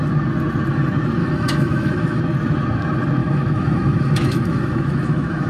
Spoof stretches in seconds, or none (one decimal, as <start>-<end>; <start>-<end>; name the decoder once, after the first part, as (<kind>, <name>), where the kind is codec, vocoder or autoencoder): 1.2-2.2 (autoencoder, DAC-VAE); 3.2-5.5